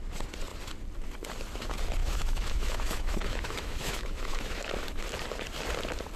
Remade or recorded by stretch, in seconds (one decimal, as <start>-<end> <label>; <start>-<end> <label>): 0.0-2.0 recorded; 2.0-4.7 remade; 4.7-6.2 recorded